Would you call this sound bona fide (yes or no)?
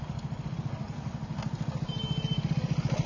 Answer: yes